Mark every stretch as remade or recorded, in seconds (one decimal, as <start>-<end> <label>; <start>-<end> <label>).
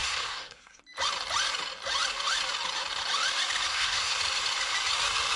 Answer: 0.0-0.8 remade; 0.8-3.7 recorded; 3.7-4.2 remade; 4.2-5.4 recorded